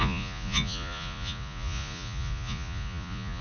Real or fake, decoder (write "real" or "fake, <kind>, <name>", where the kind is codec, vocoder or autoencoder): fake, vocoder, Vocos